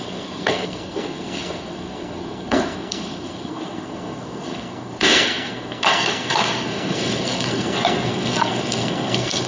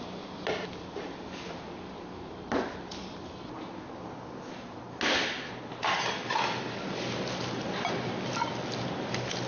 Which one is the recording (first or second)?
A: second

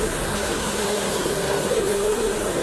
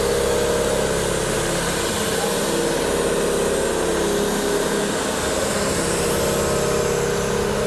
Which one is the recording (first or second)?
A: second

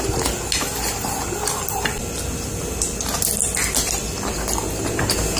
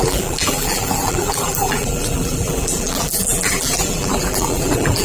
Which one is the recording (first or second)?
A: first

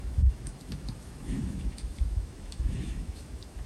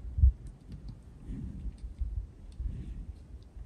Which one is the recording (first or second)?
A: second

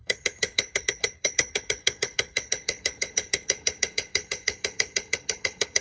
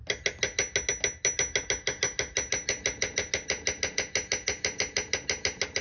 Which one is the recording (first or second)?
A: second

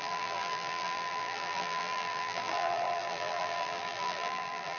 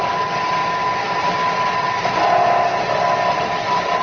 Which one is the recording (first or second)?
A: second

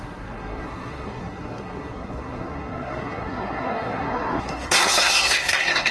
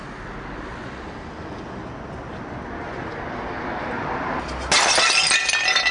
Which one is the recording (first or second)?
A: second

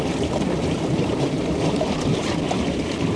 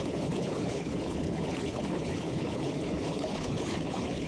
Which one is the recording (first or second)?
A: first